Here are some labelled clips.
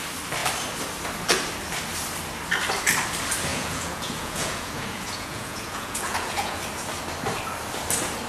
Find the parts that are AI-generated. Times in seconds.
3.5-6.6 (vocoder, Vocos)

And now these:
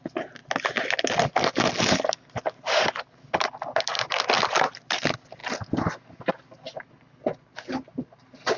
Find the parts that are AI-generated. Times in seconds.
none

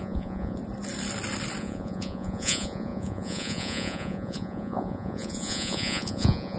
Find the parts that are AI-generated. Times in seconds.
0.0-0.6 (vocoder, Vocos); 1.6-6.6

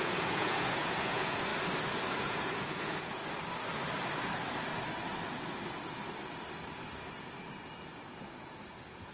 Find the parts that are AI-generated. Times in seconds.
0.0-1.5 (vocoder, Vocos); 2.1-3.2; 8.2-9.1